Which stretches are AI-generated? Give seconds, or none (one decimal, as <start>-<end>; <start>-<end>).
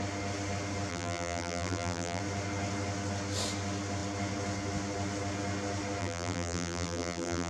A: 0.9-2.2; 6.0-7.5